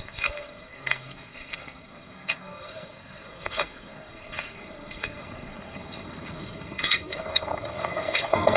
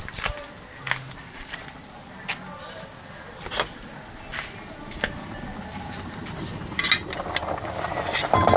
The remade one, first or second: first